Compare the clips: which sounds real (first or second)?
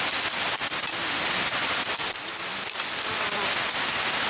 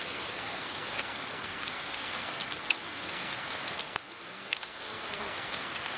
first